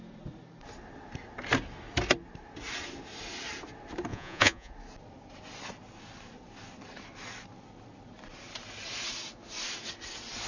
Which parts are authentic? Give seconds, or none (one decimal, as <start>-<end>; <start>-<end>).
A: 0.0-4.1; 4.7-10.5